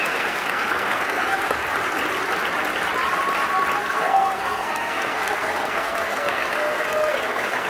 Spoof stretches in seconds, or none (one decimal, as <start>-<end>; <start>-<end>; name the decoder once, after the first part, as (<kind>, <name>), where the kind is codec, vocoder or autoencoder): 0.0-1.6 (codec, SNAC); 3.8-7.7